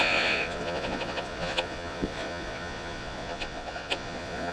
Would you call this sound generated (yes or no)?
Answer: yes